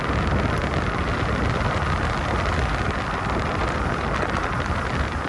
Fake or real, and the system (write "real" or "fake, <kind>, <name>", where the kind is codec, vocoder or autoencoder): real